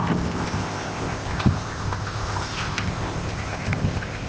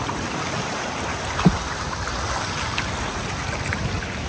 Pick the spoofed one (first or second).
first